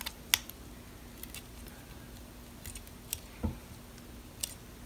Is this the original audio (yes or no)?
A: yes